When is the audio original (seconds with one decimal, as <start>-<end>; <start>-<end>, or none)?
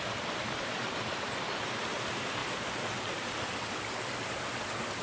0.0-5.0